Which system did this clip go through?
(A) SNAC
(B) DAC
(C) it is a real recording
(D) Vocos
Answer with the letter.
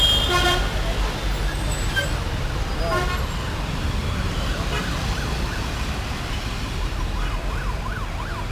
C